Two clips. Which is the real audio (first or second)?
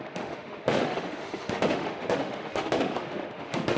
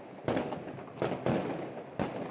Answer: second